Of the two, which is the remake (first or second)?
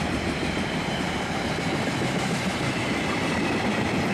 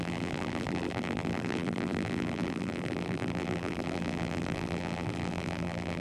second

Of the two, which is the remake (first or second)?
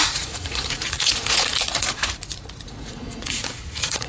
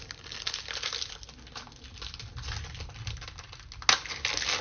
first